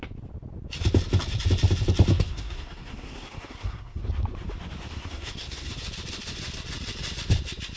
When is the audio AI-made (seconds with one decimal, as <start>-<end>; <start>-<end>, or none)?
2.1-4.0; 4.9-5.7